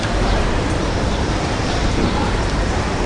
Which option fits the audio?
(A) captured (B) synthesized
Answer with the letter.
B